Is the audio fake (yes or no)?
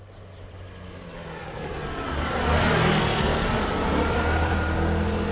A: no